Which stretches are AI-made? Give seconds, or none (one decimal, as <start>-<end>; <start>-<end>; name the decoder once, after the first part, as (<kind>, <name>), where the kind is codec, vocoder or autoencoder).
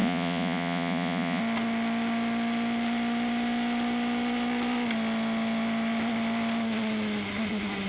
0.0-1.4 (vocoder, Vocos)